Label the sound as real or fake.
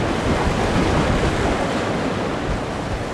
real